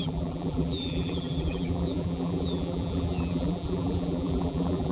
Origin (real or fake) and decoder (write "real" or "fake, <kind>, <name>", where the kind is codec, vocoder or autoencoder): fake, vocoder, BigVGAN v2